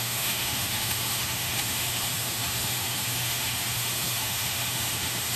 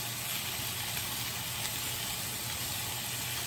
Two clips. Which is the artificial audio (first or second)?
first